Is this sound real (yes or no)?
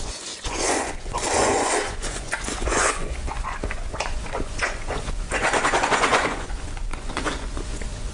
no